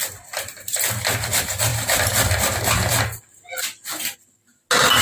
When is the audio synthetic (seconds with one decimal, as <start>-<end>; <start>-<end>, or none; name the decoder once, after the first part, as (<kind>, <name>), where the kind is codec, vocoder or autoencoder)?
1.7-4.4 (vocoder, BigVGAN v2)